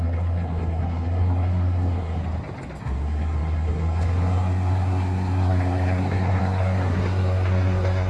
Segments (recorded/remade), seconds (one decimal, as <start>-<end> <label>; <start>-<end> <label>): 0.0-2.2 remade; 2.2-2.8 recorded; 2.8-8.1 remade